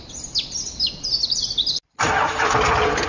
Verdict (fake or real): real